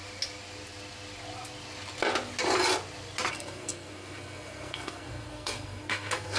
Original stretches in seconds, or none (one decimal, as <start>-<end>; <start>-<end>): 0.0-3.3